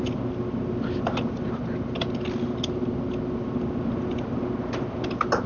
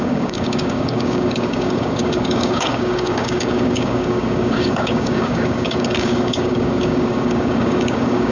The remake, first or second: second